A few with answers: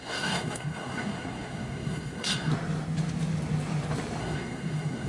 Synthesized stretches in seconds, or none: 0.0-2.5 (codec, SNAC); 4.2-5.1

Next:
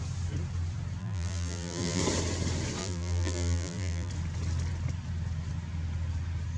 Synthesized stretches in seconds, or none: 1.0-2.0 (vocoder, BigVGAN v2); 2.8-4.1

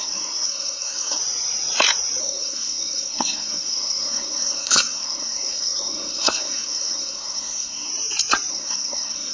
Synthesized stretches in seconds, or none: 0.0-1.2 (codec, SNAC); 2.2-7.9; 8.5-9.3

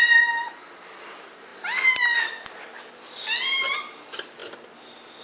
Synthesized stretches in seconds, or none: none

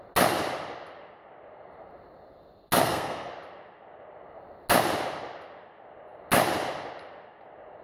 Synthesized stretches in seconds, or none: 2.8-3.3 (codec, SNAC)